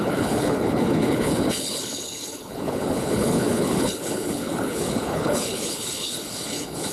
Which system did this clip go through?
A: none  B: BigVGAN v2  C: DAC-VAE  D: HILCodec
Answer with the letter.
D